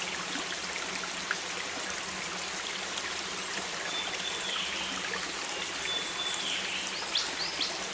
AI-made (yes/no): no